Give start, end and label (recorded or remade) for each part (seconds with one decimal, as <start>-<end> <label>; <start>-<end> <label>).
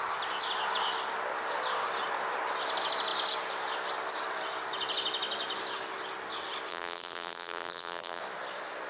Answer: 0.0-6.7 recorded; 6.7-8.2 remade; 8.2-8.9 recorded